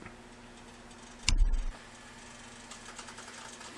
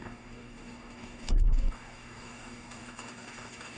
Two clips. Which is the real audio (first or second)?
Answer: first